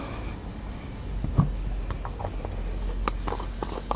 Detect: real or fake real